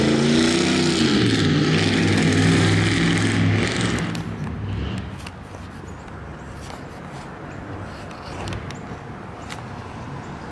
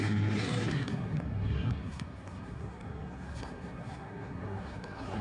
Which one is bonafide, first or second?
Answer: first